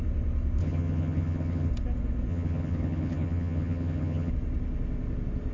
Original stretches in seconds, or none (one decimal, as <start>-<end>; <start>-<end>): 0.0-0.6; 1.7-2.3; 4.3-5.5